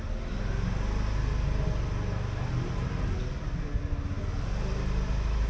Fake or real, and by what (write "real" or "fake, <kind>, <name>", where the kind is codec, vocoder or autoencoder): real